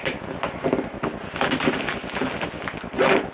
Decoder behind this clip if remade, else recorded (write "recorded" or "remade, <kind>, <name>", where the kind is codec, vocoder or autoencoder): recorded